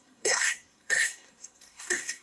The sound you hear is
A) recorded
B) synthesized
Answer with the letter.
B